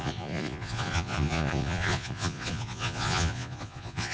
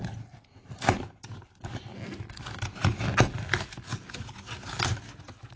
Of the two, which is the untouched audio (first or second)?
second